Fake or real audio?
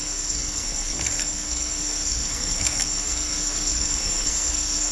fake